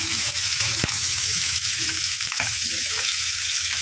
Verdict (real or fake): fake